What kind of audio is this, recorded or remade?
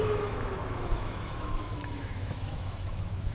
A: remade